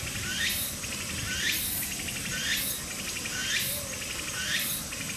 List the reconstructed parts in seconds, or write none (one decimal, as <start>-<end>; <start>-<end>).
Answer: none